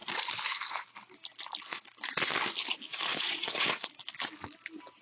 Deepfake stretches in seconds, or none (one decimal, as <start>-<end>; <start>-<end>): 3.1-3.7